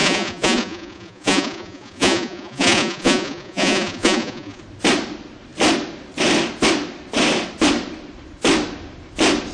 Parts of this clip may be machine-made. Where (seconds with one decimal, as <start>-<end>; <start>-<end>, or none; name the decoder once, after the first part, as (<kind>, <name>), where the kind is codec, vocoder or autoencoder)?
0.0-4.6 (vocoder, Vocos)